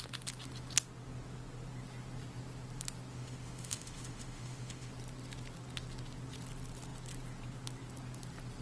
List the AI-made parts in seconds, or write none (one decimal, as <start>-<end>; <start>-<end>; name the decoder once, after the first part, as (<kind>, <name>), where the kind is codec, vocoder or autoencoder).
3.1-4.9 (autoencoder, DAC-VAE)